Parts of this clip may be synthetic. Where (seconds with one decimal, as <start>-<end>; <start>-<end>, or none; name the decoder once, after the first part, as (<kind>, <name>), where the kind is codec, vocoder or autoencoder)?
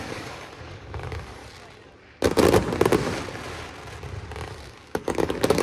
0.0-1.4 (codec, DAC); 4.7-5.6